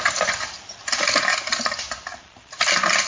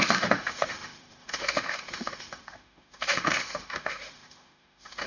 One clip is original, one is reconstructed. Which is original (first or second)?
first